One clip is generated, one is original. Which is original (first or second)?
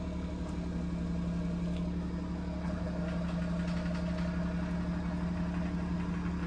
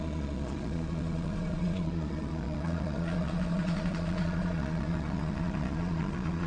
first